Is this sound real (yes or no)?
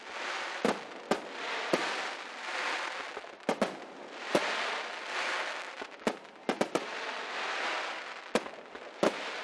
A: yes